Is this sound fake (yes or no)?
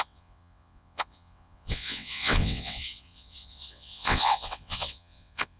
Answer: yes